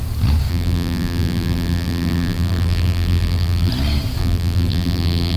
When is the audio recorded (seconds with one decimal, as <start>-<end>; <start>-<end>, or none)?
0.0-0.5; 3.7-4.2